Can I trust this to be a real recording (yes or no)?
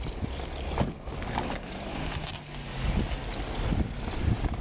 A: yes